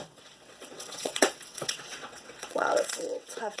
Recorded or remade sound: remade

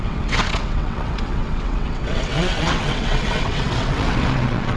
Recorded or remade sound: remade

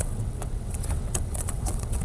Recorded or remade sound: remade